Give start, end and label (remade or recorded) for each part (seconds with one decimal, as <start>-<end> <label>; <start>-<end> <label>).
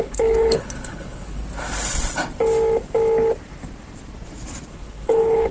0.0-1.4 remade; 1.4-4.7 recorded; 4.7-5.5 remade